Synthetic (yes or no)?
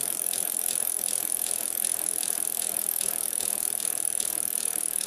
yes